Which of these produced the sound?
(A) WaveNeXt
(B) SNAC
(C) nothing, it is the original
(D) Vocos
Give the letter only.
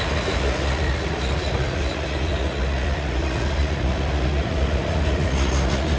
D